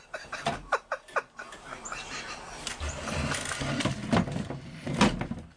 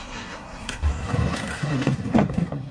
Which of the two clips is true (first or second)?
first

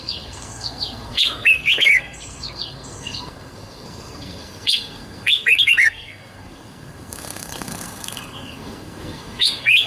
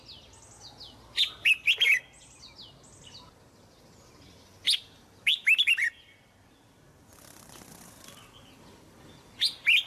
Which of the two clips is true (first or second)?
second